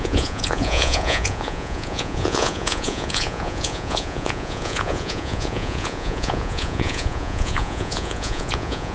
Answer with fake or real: fake